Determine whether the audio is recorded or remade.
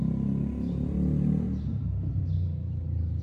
recorded